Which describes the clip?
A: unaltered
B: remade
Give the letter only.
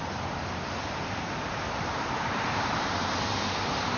B